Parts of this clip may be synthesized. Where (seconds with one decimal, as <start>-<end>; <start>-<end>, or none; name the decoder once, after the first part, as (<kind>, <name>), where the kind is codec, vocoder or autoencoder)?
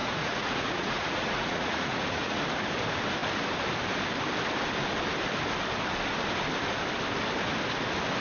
0.0-2.4 (vocoder, Vocos)